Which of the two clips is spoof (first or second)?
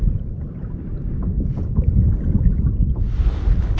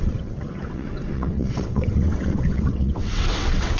second